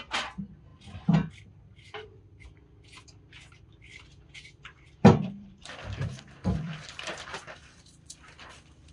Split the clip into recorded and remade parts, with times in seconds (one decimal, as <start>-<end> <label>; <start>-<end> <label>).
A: 0.0-3.9 recorded; 3.9-8.9 remade